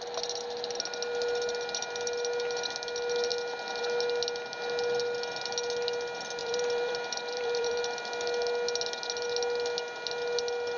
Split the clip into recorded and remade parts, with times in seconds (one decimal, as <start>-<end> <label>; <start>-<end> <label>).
0.0-6.4 recorded; 6.4-7.8 remade; 7.8-10.8 recorded